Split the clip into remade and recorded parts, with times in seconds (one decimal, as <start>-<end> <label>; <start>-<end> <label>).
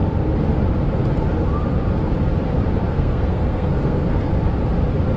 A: 0.0-2.9 recorded; 2.9-4.3 remade; 4.3-5.2 recorded